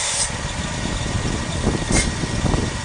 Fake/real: real